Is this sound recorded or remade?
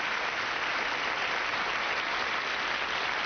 recorded